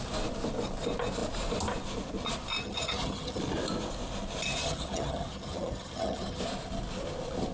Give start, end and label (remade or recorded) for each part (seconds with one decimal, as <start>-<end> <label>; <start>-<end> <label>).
0.0-2.6 recorded; 2.6-3.4 remade; 3.4-4.6 recorded; 4.6-6.4 remade; 6.4-7.5 recorded